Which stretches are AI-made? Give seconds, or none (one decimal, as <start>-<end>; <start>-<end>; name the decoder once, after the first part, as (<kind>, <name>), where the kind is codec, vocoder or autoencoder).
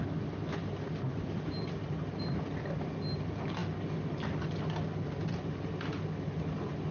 none